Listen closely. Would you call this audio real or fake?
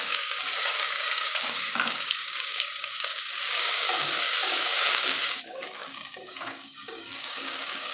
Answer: fake